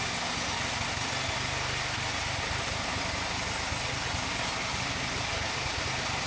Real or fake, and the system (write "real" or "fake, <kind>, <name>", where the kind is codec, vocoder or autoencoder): real